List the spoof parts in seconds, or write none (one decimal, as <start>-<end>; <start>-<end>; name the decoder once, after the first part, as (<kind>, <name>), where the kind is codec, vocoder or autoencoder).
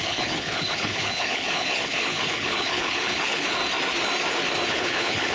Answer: 0.0-3.6 (codec, HILCodec); 4.7-5.3